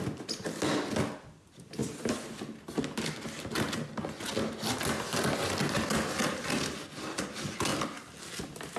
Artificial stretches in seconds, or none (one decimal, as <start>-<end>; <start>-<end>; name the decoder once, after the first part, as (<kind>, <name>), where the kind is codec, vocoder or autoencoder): none